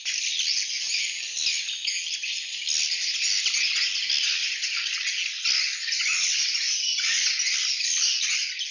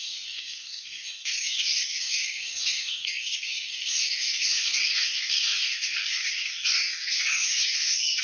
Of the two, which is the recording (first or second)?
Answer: first